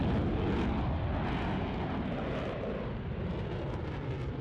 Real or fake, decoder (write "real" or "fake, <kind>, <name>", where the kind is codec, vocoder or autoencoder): real